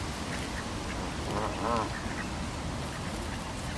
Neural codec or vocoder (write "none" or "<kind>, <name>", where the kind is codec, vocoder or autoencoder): none